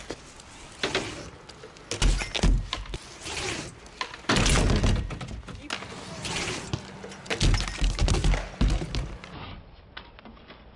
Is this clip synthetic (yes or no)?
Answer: no